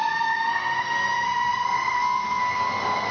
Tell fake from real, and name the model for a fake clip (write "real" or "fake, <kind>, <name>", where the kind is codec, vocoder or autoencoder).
fake, codec, SNAC